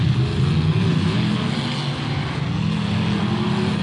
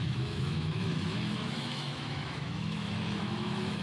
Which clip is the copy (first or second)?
second